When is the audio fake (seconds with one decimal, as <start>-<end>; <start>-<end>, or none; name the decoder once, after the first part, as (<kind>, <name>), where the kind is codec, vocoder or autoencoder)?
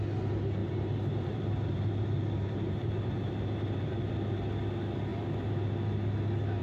0.6-4.1 (vocoder, BigVGAN v2)